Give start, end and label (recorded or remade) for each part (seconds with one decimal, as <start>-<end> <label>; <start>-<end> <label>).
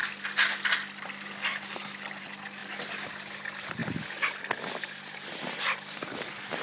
0.0-6.6 recorded